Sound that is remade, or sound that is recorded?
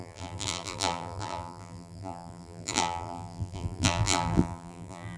remade